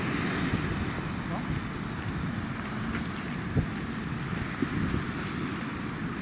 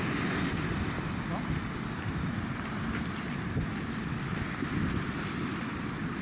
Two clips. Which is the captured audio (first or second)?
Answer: first